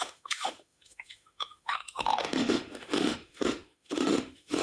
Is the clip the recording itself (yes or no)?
no